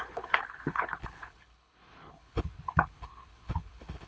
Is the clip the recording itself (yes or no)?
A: no